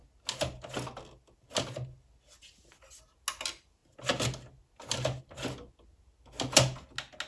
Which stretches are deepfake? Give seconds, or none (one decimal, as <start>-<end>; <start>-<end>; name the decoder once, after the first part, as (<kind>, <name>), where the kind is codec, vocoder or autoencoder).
none